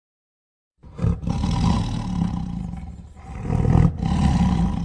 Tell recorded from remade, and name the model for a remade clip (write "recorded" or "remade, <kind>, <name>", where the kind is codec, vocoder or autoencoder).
recorded